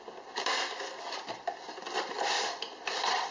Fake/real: fake